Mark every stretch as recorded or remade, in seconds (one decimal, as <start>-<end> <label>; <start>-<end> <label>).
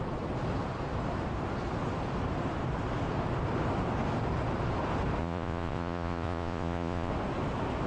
0.0-5.2 recorded; 5.2-7.1 remade; 7.1-7.9 recorded